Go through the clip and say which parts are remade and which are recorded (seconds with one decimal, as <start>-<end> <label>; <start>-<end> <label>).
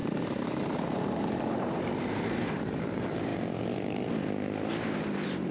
0.0-3.3 remade; 3.3-4.7 recorded; 4.7-5.5 remade